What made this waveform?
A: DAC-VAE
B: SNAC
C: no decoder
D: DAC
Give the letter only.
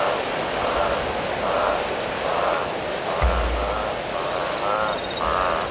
C